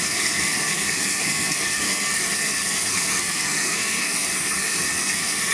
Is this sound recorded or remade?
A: remade